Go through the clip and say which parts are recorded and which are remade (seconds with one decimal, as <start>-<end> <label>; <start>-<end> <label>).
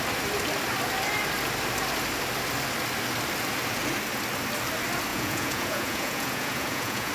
0.0-5.1 recorded; 5.1-7.1 remade